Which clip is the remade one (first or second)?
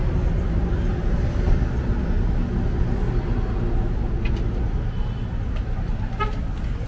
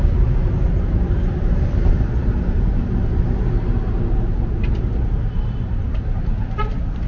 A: second